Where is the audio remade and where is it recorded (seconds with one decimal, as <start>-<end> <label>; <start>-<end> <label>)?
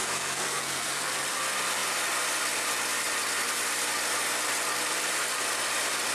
0.0-1.1 remade; 1.1-6.1 recorded